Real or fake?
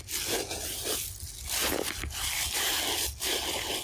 real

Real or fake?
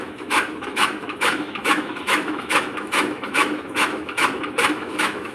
fake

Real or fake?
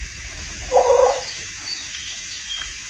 fake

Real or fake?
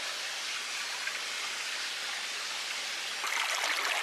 real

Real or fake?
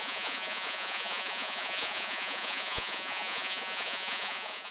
fake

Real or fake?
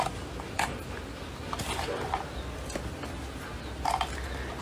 real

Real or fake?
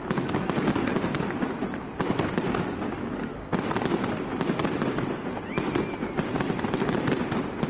real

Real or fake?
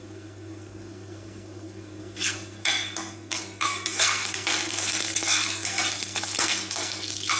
fake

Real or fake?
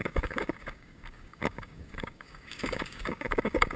fake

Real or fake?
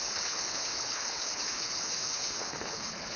fake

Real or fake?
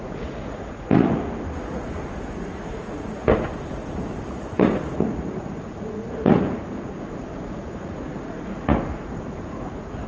fake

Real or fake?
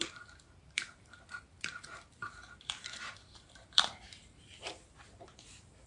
fake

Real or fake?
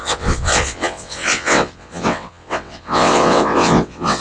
fake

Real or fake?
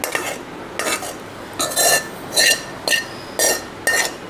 real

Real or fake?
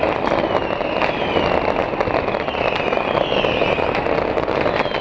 real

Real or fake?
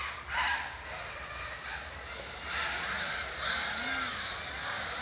real